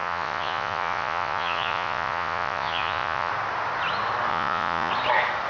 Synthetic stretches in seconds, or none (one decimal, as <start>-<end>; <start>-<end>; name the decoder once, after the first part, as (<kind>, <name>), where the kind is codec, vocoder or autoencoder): 0.0-3.3 (vocoder, Vocos); 4.3-4.9